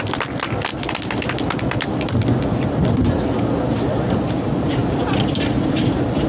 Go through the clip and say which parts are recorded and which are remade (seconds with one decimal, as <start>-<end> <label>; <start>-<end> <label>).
0.0-6.3 recorded

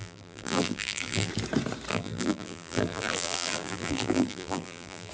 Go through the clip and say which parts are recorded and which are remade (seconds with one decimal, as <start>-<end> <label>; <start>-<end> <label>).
0.0-1.3 remade; 1.3-1.9 recorded; 1.9-5.1 remade

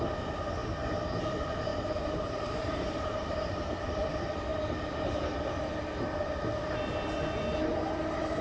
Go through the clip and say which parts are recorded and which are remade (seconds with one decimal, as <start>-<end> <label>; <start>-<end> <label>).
0.0-1.7 recorded; 1.7-4.1 remade; 4.1-8.4 recorded

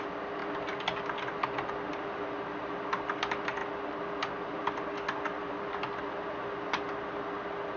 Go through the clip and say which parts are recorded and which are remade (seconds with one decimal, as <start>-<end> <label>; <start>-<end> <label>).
0.0-0.4 remade; 0.4-1.3 recorded; 1.3-3.6 remade; 3.6-4.3 recorded; 4.3-7.8 remade

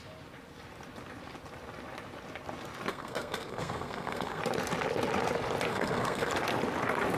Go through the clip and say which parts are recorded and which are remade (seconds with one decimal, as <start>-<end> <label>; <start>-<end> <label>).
0.0-2.9 recorded; 2.9-4.4 remade; 4.4-5.7 recorded; 5.7-6.3 remade; 6.3-7.2 recorded